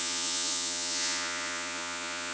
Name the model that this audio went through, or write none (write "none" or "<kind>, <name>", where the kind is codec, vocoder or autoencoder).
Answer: vocoder, Vocos